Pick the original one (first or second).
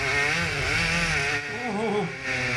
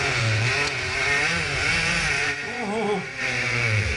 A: first